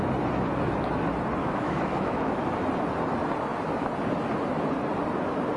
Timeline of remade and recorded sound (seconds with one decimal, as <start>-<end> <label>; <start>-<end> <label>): 0.0-1.4 recorded; 1.4-2.5 remade; 2.5-5.6 recorded